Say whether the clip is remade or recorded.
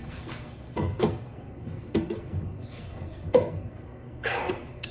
remade